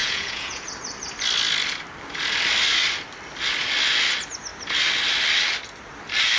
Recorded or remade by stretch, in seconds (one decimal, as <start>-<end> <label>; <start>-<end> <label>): 0.0-0.7 remade; 0.7-6.4 recorded